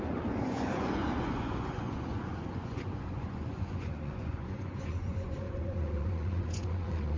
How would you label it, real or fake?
fake